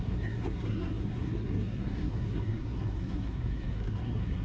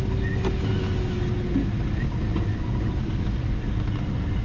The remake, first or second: first